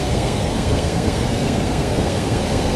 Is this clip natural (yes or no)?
no